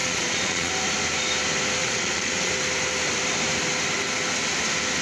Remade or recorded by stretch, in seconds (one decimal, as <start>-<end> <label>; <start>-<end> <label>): 0.0-0.7 remade; 0.7-1.8 recorded; 1.8-2.5 remade; 2.5-5.0 recorded